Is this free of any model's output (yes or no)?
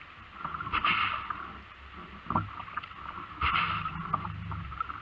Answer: yes